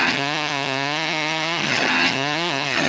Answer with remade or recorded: remade